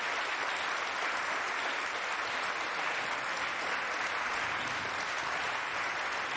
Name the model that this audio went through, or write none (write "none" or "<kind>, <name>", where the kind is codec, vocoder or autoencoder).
none